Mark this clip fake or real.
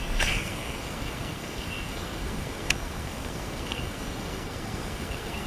fake